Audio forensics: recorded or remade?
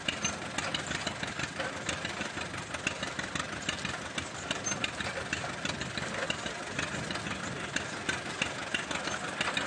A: recorded